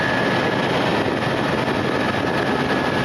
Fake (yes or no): no